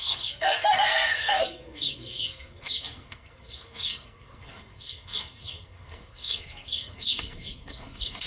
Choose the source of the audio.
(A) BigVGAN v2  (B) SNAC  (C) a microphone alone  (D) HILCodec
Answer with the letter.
B